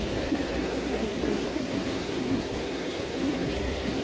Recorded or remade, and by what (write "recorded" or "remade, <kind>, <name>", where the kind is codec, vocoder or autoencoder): remade, codec, SNAC